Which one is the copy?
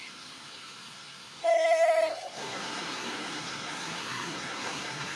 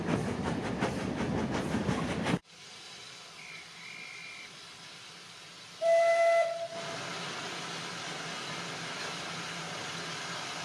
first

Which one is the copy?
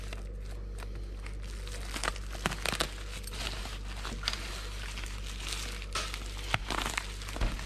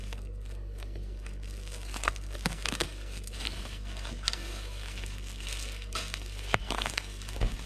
second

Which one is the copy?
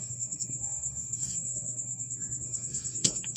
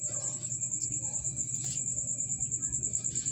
first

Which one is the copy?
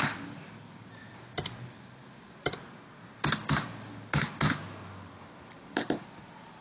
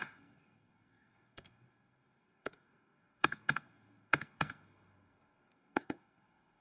second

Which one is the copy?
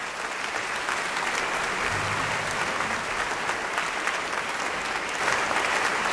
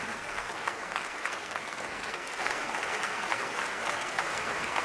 second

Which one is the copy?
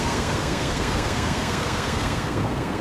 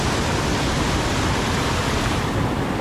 first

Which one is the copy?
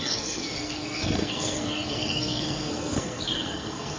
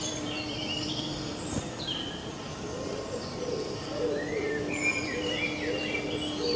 first